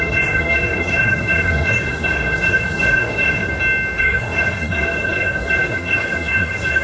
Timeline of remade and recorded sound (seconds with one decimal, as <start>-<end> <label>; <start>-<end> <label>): 0.0-3.5 remade; 3.5-4.0 recorded; 4.0-6.8 remade